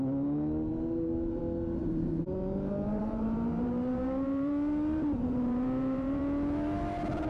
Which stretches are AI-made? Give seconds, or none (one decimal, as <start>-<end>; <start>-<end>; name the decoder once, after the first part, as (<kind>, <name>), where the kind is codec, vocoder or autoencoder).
0.7-1.4 (vocoder, BigVGAN v2); 1.8-6.2